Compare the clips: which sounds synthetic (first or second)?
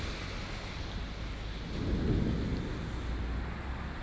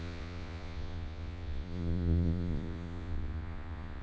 second